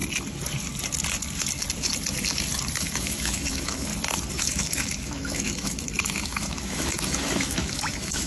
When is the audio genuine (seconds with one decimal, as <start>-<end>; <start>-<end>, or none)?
0.0-2.8; 3.9-4.4